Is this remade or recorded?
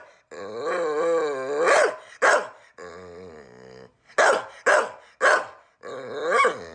recorded